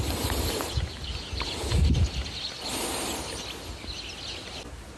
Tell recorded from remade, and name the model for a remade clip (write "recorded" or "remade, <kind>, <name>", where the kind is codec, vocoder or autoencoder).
recorded